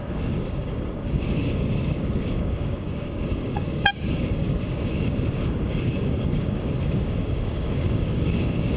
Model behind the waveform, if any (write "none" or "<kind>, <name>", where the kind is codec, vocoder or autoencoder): codec, DAC